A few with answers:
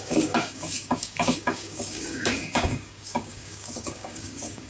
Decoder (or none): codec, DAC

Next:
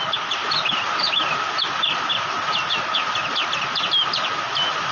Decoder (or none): none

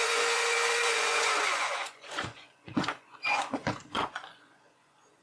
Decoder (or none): vocoder, Vocos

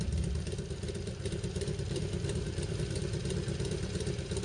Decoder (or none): vocoder, BigVGAN v2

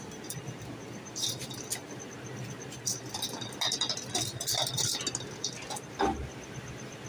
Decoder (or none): none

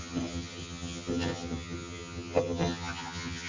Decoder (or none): vocoder, HiFi-GAN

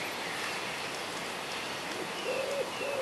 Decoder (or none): none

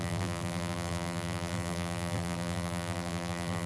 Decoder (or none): vocoder, BigVGAN v2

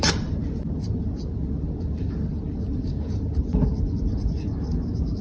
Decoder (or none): vocoder, BigVGAN v2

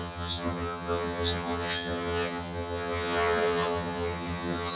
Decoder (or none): vocoder, HiFi-GAN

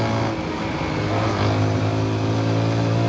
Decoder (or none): none